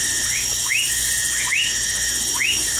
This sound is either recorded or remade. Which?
recorded